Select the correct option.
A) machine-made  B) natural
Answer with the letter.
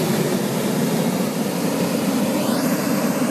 B